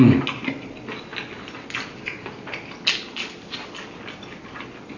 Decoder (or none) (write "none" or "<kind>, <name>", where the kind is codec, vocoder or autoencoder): none